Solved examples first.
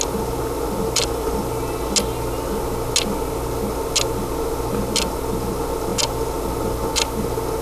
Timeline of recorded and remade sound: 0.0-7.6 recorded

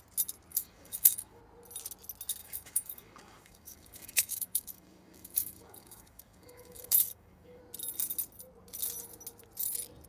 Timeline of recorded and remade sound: 0.0-0.5 recorded; 0.5-1.4 remade; 1.4-2.4 recorded; 2.4-7.6 remade; 7.6-10.1 recorded